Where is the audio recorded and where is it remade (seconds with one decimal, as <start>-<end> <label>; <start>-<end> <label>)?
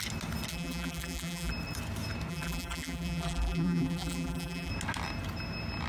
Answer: 0.0-0.5 recorded; 0.5-1.5 remade; 1.5-2.3 recorded; 2.3-4.7 remade; 4.7-5.9 recorded